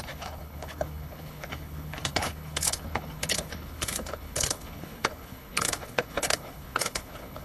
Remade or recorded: remade